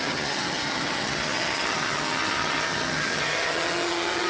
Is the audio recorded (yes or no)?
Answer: no